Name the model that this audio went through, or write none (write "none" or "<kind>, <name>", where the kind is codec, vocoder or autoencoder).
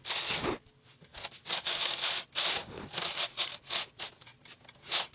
none